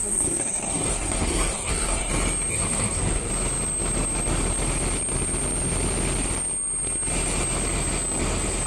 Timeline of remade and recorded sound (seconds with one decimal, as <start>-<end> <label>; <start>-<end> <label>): 0.0-2.1 remade; 2.1-2.5 recorded; 2.5-3.3 remade; 3.3-8.7 recorded